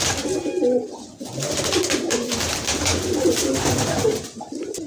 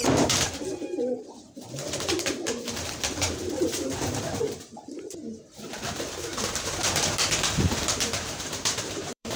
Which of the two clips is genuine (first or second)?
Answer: first